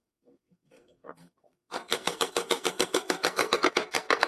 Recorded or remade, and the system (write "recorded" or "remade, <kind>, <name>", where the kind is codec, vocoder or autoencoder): remade, codec, SNAC